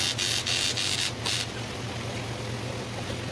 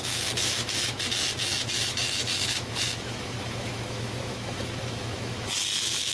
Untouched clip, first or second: first